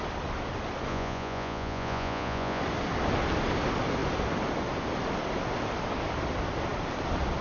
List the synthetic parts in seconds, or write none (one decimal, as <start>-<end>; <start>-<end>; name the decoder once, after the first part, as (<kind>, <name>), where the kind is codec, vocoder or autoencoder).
0.9-2.6 (vocoder, Vocos)